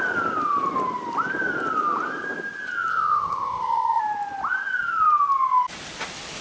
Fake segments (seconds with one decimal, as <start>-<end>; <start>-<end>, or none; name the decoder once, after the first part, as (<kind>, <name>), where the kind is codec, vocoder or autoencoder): 2.9-4.0 (codec, ZipCodec)